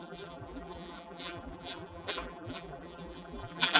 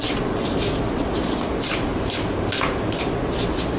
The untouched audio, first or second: second